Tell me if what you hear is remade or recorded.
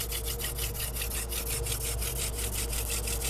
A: recorded